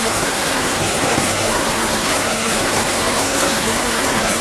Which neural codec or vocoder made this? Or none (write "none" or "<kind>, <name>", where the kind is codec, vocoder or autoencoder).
codec, SNAC